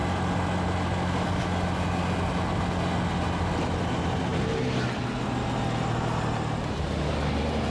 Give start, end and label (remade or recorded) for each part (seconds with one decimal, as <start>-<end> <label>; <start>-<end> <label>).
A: 0.0-7.7 recorded